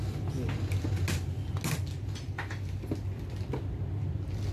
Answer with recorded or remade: recorded